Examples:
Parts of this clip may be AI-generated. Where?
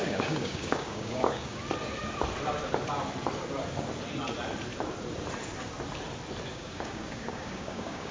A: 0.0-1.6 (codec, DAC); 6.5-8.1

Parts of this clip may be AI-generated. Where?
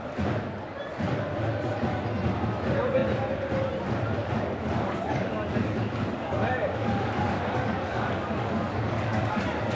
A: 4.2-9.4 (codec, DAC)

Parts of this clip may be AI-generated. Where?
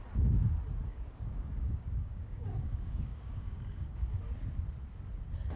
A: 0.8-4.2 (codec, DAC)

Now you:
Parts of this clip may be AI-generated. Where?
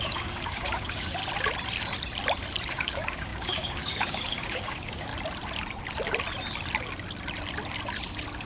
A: 0.0-1.2 (codec, DAC); 2.7-5.1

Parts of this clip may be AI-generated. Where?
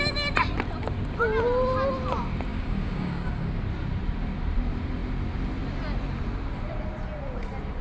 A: 2.5-3.6 (codec, DAC)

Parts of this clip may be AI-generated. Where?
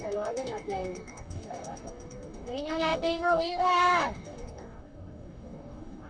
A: 0.0-6.1 (codec, DAC)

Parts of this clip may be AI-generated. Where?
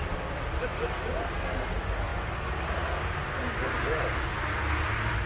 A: none